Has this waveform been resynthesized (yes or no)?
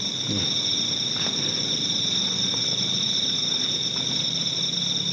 no